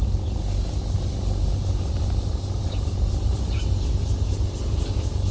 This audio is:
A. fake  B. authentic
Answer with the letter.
B